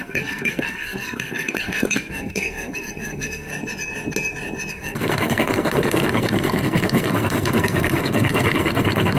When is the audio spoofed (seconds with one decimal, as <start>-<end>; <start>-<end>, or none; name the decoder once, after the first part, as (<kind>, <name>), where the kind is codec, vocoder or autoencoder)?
0.0-3.5 (codec, SNAC); 4.7-9.2